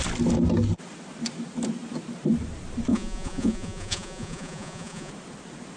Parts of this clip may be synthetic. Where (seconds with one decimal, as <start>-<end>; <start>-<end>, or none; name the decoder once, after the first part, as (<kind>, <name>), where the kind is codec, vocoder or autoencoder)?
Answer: 2.9-5.1 (vocoder, Vocos)